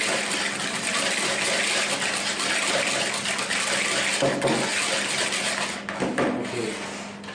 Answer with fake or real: real